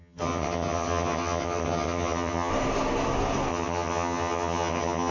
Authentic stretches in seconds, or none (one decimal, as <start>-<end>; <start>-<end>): 2.5-3.5